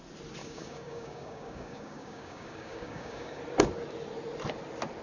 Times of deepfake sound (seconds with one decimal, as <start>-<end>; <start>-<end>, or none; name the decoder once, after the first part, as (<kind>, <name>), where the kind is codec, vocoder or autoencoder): 0.4-3.4 (codec, DAC)